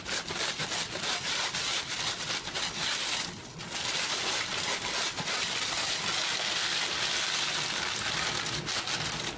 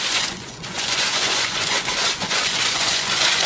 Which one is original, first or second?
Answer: first